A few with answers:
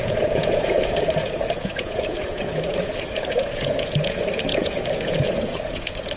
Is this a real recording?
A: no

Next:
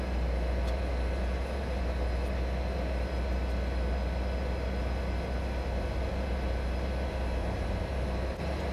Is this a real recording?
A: yes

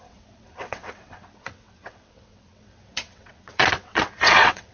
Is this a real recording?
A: no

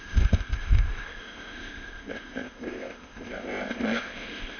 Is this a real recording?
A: no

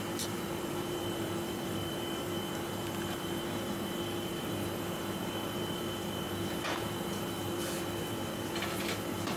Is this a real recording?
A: no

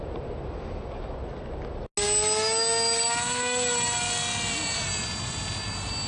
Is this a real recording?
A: yes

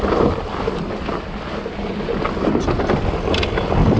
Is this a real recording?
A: yes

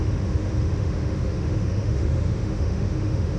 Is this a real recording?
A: no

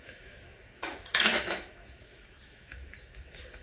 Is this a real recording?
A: no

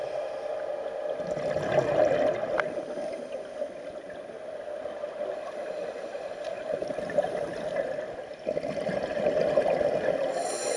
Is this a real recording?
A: yes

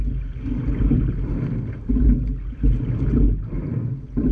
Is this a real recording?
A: yes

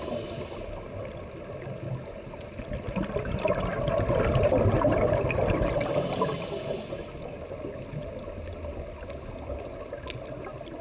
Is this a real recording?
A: yes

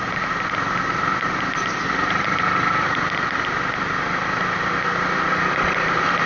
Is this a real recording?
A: no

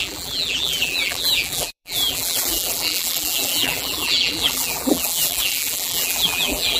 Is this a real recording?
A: no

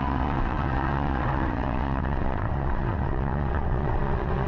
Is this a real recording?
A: no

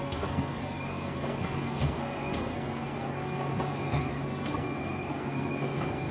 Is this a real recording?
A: no